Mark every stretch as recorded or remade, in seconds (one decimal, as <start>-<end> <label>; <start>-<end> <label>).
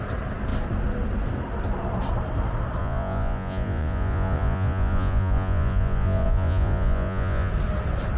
0.0-2.8 recorded; 2.8-7.5 remade; 7.5-8.2 recorded